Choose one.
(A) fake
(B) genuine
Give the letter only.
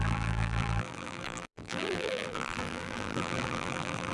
A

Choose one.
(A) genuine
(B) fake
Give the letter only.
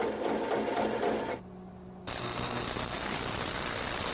A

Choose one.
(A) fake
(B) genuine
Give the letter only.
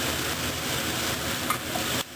B